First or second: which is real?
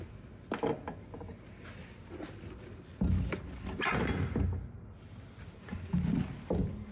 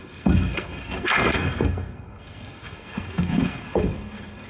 first